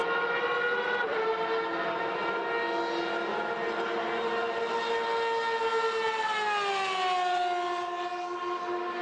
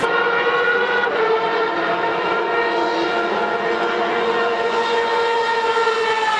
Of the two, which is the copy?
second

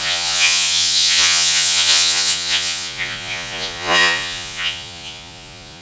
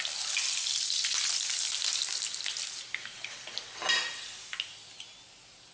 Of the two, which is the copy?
first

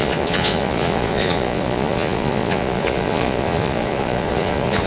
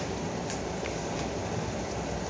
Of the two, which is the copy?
first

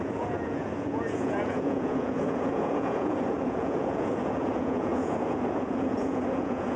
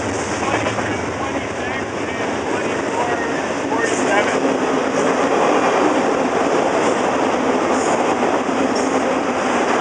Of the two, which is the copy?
first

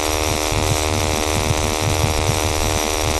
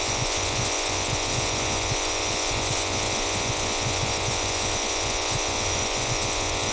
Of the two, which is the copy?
second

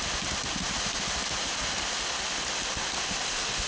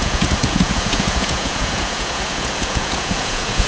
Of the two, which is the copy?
second